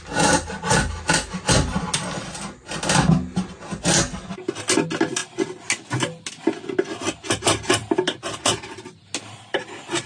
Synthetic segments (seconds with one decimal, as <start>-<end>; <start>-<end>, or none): none

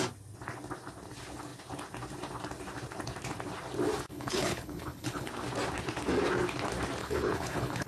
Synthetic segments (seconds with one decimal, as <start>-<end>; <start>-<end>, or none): 4.1-5.3; 7.0-7.9

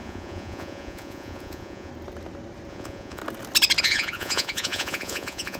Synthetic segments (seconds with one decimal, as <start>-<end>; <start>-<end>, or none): 0.0-1.9; 2.7-3.2; 3.8-5.6